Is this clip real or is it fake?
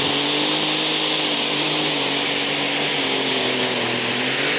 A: real